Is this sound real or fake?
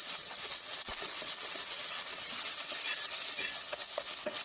fake